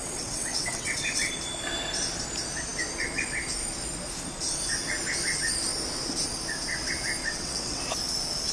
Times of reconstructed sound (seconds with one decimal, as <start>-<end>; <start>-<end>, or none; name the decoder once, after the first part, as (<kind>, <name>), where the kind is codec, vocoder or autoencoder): 0.0-1.3 (vocoder, WaveNeXt); 7.2-7.8